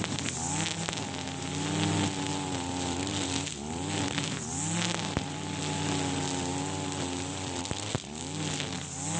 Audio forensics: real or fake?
real